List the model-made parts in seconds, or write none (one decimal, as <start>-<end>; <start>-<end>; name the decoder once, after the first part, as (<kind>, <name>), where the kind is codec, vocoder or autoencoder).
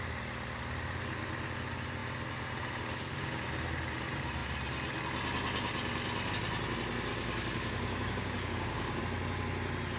7.1-9.0 (codec, DAC)